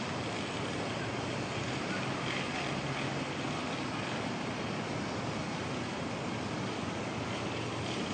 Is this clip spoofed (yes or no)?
no